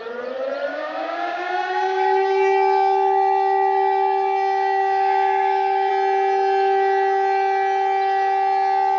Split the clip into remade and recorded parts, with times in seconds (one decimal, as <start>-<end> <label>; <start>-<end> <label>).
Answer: 0.0-0.7 recorded; 0.7-5.9 remade; 5.9-9.0 recorded